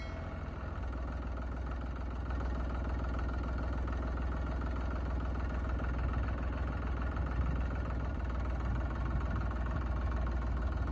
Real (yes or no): yes